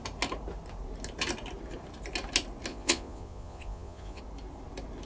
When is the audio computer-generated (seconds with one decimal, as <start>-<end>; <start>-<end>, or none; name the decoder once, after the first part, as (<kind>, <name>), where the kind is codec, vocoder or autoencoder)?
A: 2.7-4.2 (vocoder, Vocos)